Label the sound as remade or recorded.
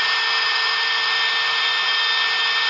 recorded